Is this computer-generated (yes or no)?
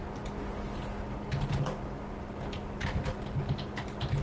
no